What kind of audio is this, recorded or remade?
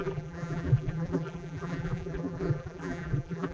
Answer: remade